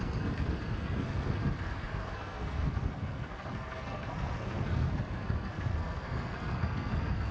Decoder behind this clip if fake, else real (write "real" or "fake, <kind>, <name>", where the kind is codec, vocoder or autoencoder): fake, codec, SNAC